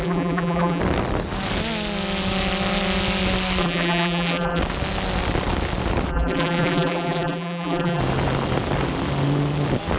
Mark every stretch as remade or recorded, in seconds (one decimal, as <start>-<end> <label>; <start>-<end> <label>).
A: 0.0-0.8 remade; 0.8-3.6 recorded; 3.6-4.6 remade; 4.6-6.1 recorded; 6.1-8.0 remade; 8.0-10.0 recorded